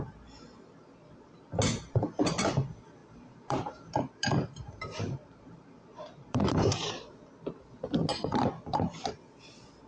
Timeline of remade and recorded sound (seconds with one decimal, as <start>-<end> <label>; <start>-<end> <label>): 0.0-3.0 recorded; 3.0-6.9 remade; 6.9-9.9 recorded